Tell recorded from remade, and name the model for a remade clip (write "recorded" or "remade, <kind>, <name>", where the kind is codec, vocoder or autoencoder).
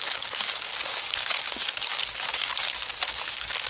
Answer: remade, codec, DAC